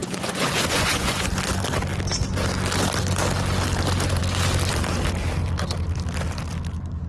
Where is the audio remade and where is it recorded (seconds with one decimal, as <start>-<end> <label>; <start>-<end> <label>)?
0.0-1.3 remade; 1.3-7.1 recorded